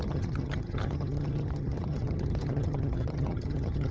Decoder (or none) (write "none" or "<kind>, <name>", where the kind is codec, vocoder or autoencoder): vocoder, HiFi-GAN